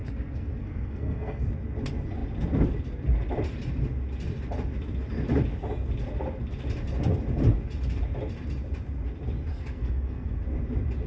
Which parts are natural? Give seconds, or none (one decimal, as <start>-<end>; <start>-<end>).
1.4-9.5; 10.4-11.1